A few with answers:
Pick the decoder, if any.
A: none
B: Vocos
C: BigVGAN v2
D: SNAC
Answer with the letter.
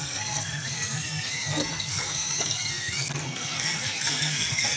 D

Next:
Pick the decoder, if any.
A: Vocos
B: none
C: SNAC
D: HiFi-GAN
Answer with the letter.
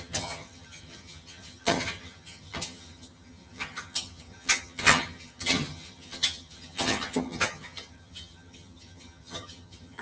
D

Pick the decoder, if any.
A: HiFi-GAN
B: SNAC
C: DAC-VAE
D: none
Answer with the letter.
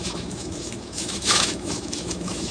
C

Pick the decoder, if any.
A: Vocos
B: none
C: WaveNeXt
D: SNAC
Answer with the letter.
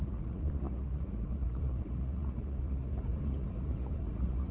A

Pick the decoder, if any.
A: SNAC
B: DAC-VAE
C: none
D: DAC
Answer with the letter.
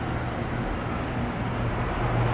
C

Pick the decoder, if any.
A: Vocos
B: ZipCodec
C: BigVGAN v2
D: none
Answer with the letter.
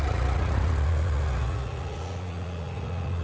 A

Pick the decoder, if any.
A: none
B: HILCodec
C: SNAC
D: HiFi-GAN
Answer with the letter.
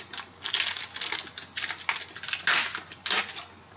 A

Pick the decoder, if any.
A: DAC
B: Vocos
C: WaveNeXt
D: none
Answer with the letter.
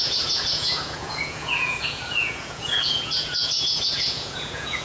B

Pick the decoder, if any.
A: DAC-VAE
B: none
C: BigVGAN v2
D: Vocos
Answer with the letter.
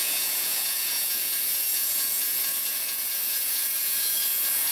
D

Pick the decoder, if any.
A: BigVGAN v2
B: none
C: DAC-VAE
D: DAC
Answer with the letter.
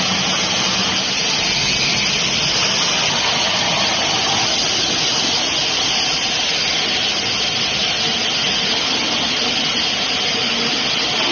B